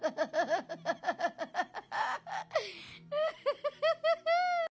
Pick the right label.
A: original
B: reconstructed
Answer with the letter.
A